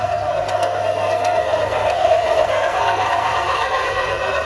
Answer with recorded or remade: remade